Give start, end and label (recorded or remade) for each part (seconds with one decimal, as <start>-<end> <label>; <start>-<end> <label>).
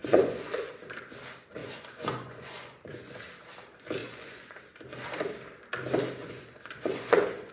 0.0-0.7 remade; 0.7-1.6 recorded; 1.6-3.2 remade; 3.2-4.0 recorded; 4.0-4.6 remade; 4.6-6.2 recorded; 6.2-7.5 remade